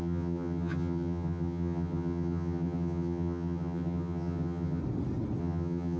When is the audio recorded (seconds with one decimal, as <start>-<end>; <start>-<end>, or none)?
4.8-5.4